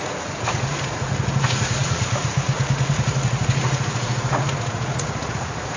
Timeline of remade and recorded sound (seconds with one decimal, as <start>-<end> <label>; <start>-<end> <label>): 0.0-5.8 remade